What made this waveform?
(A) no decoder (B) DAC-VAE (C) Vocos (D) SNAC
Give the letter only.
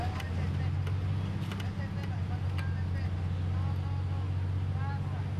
A